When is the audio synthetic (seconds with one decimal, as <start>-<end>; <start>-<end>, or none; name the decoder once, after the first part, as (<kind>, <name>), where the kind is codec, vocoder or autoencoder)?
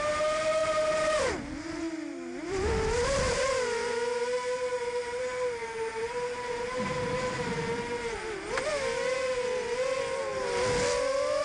0.6-5.2 (vocoder, BigVGAN v2); 5.9-7.1